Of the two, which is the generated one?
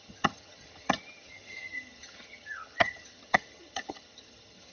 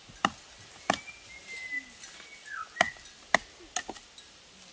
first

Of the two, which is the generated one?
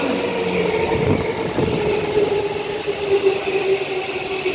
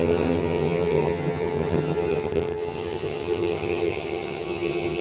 second